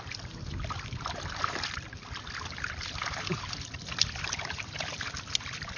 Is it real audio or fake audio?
real